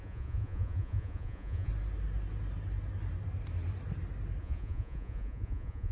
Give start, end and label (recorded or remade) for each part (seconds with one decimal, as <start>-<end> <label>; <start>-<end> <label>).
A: 0.0-1.7 remade; 1.7-4.4 recorded; 4.4-5.9 remade